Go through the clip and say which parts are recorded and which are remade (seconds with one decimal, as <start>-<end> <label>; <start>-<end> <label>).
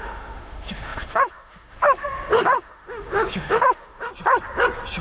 0.0-4.1 remade; 4.1-5.0 recorded